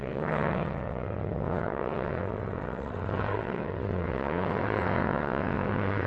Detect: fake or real fake